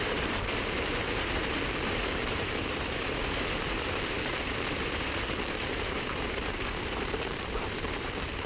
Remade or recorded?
remade